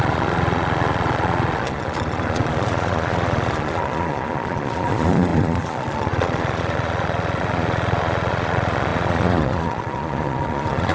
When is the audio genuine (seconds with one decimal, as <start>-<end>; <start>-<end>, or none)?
none